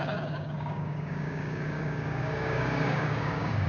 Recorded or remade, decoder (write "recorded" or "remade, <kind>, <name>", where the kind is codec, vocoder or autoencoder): remade, codec, DAC